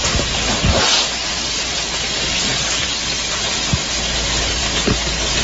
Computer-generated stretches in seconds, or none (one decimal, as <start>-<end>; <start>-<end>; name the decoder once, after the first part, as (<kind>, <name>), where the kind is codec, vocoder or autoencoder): none